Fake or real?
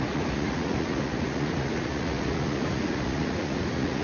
fake